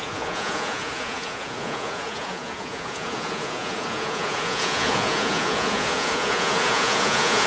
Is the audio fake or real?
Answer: fake